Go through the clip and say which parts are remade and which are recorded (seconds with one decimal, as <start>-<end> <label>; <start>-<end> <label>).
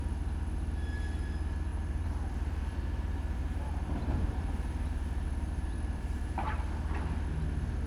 0.0-1.7 recorded; 1.7-6.4 remade; 6.4-7.9 recorded